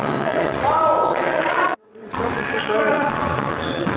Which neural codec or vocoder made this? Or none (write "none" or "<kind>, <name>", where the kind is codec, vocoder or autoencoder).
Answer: vocoder, WaveNeXt